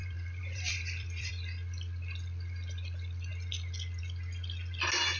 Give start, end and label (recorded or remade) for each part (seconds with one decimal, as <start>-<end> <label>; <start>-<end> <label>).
0.0-1.3 remade; 1.3-5.2 recorded